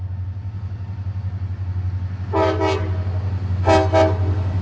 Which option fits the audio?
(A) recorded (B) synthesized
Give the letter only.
A